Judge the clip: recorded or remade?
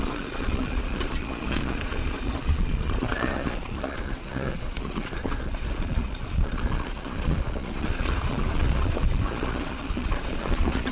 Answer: remade